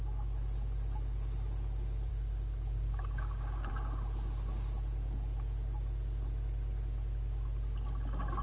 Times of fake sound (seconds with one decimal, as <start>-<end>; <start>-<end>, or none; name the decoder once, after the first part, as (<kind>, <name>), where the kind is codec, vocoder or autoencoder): 2.1-3.7 (codec, DAC)